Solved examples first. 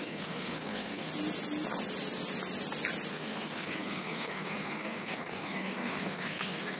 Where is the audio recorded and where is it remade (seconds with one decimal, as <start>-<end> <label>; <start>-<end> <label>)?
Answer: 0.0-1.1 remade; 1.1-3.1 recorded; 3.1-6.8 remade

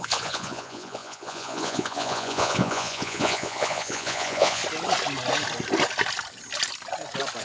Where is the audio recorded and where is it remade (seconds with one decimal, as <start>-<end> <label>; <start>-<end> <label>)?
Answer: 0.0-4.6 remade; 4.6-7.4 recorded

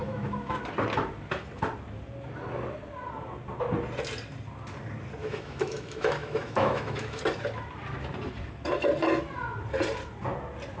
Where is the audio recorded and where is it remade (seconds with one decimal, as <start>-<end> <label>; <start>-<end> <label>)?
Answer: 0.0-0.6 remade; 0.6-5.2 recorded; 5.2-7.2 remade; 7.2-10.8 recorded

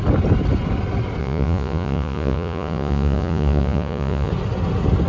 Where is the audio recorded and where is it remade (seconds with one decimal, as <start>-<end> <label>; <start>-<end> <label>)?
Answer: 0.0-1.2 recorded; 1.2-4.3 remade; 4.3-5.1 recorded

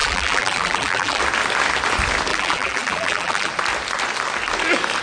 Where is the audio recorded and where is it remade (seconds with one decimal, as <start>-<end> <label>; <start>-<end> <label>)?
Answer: 0.0-1.2 remade; 1.2-2.3 recorded; 2.3-3.5 remade; 3.5-5.0 recorded

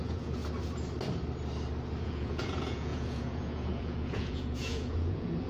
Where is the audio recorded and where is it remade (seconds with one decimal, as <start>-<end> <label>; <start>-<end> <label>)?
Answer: 0.0-0.4 remade; 0.4-2.0 recorded; 2.0-5.5 remade

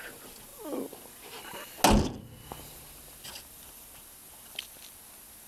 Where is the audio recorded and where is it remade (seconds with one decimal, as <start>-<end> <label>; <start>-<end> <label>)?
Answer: 0.0-5.5 recorded

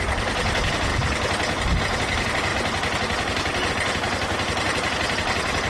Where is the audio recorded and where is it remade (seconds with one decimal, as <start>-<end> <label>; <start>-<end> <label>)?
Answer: 0.0-5.7 recorded